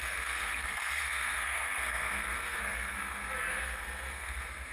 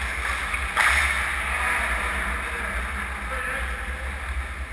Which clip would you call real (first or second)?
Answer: second